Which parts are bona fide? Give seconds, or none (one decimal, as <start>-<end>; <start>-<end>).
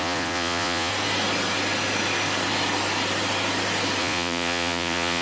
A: 0.9-4.0